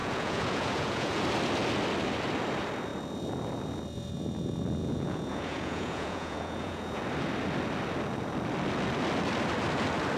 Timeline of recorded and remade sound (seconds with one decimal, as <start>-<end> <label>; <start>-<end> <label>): 0.0-1.2 remade; 1.2-4.8 recorded; 4.8-7.0 remade; 7.0-10.2 recorded